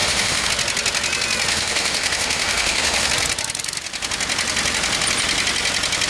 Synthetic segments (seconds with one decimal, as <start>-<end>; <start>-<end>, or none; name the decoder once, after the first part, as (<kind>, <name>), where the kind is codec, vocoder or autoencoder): 0.0-0.5 (autoencoder, DAC-VAE); 1.5-3.1